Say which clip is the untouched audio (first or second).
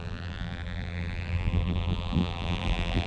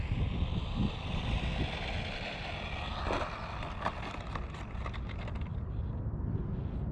second